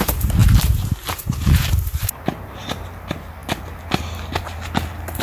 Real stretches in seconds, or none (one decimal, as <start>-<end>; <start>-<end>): 0.0-0.4; 2.9-5.2